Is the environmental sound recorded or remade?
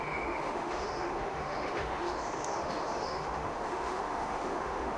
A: remade